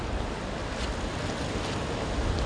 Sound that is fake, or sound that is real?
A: real